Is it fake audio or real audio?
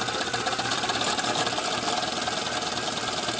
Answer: real